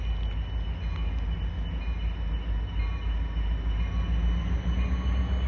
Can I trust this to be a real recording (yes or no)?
yes